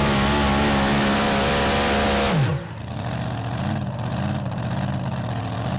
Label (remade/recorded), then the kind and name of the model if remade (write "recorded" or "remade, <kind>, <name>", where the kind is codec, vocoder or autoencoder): recorded